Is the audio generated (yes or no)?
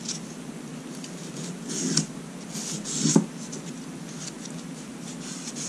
no